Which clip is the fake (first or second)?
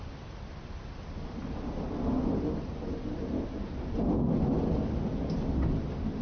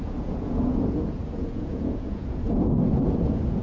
second